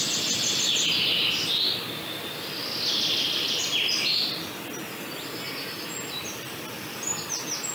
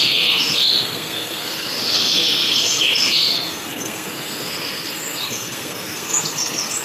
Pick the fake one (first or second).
second